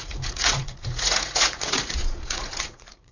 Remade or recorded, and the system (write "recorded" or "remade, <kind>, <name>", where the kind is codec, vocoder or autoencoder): remade, vocoder, Vocos